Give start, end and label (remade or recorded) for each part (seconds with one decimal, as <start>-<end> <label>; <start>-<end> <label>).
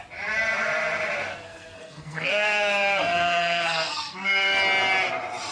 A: 0.0-1.3 recorded; 1.3-4.6 remade; 4.6-5.5 recorded